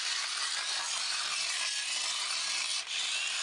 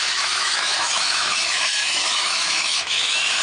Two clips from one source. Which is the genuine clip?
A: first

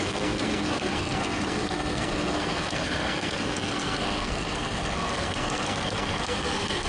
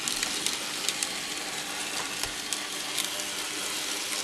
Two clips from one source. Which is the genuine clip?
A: second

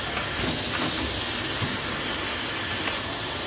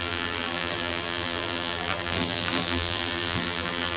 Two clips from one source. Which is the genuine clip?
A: first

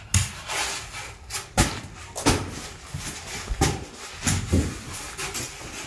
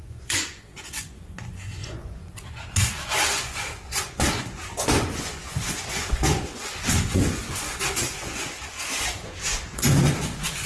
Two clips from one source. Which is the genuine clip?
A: first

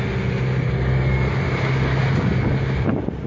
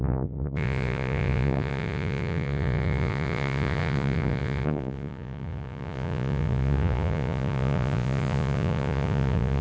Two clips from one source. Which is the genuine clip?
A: first